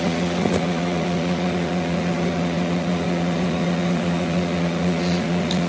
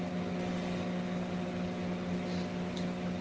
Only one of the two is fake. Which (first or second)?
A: first